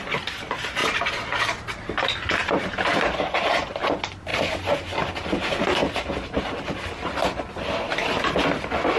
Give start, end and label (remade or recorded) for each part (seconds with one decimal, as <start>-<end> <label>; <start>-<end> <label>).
0.0-0.8 recorded; 0.8-3.5 remade; 3.5-5.8 recorded; 5.8-6.4 remade; 6.4-9.0 recorded